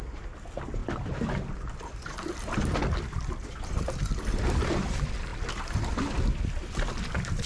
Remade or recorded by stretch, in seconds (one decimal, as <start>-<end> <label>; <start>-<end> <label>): 0.0-7.5 recorded